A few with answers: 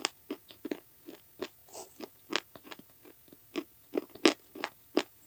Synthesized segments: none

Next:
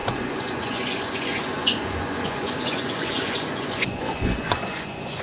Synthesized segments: 0.0-5.2

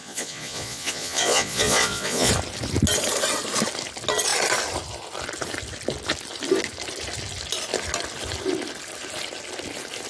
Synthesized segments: 0.0-2.3

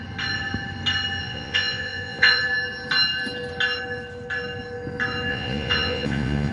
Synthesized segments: 1.2-2.4; 5.3-6.5

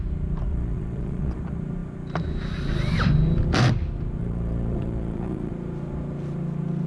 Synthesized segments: 0.5-1.4; 4.2-5.5

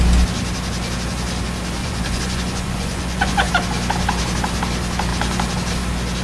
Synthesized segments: 1.8-3.5

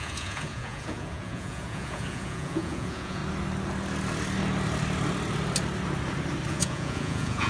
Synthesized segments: 0.0-3.2; 6.5-7.5

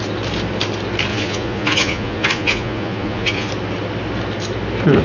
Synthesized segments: 1.1-3.5